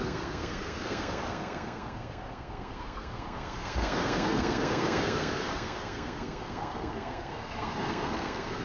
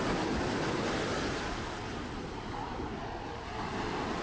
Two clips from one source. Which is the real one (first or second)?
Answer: second